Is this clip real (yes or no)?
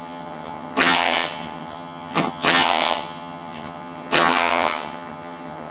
no